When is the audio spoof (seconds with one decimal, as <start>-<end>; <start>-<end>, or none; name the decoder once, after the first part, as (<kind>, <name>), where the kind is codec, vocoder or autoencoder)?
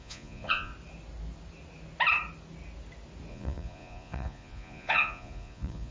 0.0-0.7 (vocoder, Vocos); 3.3-5.9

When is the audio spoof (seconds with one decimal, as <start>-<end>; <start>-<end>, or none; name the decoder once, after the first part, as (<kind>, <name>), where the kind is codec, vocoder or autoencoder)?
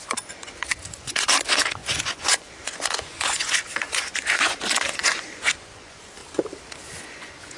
0.0-6.2 (vocoder, Vocos); 7.0-7.6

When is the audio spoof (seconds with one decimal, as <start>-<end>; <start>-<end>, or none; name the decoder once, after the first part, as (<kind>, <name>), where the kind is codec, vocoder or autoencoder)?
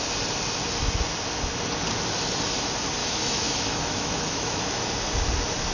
3.0-4.9 (autoencoder, DAC-VAE)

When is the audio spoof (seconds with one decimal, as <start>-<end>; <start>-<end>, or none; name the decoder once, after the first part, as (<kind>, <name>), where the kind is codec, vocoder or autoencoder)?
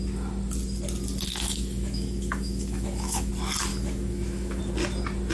1.3-3.3 (autoencoder, DAC-VAE); 3.7-4.6